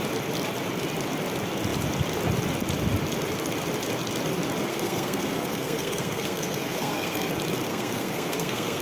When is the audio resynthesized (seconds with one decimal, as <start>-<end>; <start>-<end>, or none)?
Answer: 4.7-7.3; 7.7-8.8